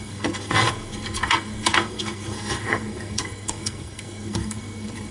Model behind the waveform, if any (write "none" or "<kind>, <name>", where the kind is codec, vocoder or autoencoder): codec, SNAC